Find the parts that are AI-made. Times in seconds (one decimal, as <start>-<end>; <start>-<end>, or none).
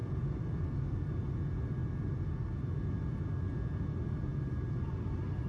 0.0-0.6; 1.8-2.9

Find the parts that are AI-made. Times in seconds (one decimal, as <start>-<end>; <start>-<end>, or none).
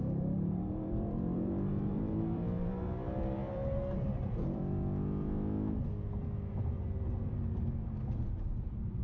0.0-4.6; 6.5-9.0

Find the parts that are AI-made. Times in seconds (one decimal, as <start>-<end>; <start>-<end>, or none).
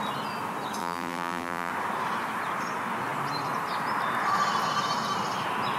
0.8-1.7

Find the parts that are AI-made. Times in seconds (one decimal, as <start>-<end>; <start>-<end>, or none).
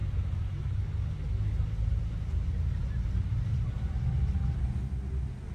none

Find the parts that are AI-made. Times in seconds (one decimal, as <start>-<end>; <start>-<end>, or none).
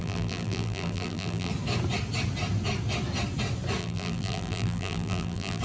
0.0-1.5; 3.8-5.6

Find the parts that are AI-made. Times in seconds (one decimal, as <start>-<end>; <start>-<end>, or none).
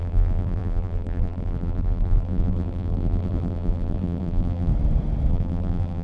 0.0-4.7; 5.3-6.0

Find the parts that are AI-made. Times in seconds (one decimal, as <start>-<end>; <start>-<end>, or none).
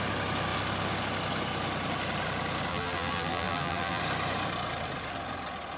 2.7-4.0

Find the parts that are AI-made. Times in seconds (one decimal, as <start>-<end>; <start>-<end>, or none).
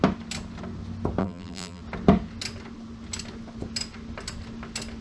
1.2-1.8